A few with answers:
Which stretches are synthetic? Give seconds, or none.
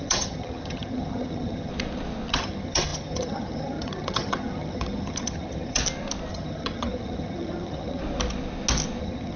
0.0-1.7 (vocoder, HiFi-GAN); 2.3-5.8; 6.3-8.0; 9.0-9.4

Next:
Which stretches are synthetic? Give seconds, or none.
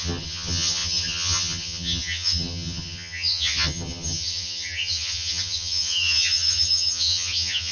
0.0-7.7 (vocoder, HiFi-GAN)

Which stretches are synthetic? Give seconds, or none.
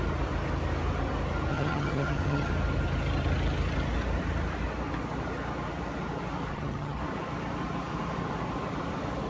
1.5-2.5 (vocoder, HiFi-GAN); 6.5-7.0